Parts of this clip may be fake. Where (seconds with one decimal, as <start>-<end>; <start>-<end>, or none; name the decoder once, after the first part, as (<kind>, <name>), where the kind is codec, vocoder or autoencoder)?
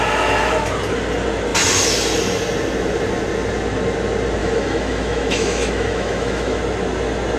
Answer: 4.4-6.6 (autoencoder, DAC-VAE)